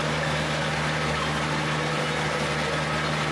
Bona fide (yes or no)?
yes